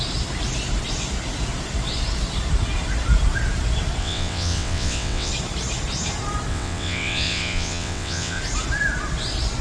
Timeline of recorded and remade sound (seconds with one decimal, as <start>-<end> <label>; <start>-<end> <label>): 0.0-4.0 recorded; 4.0-5.3 remade; 5.3-6.5 recorded; 6.5-8.4 remade; 8.4-9.6 recorded